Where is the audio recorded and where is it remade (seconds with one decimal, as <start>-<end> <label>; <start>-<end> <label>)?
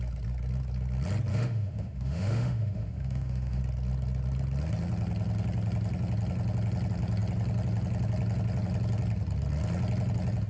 0.0-1.3 recorded; 1.3-3.6 remade; 3.6-10.5 recorded